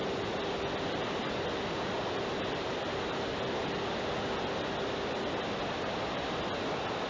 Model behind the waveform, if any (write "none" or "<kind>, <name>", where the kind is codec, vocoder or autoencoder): none